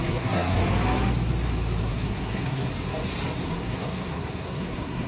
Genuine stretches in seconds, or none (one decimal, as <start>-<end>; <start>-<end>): 0.6-1.8; 2.7-3.4